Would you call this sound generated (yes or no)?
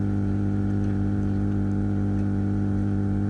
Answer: yes